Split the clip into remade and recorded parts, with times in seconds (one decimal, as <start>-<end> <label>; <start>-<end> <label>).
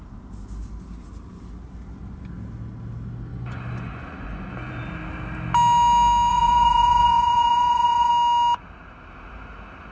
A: 0.0-3.3 recorded; 3.3-4.8 remade; 4.8-6.3 recorded; 6.3-8.1 remade; 8.1-9.9 recorded